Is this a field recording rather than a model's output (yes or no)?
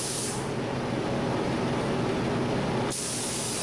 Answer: yes